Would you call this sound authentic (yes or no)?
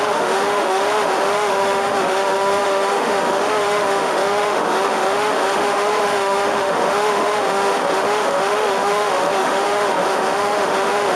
no